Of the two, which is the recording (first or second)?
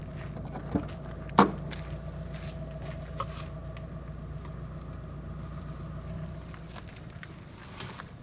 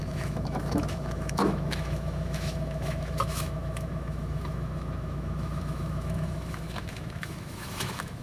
first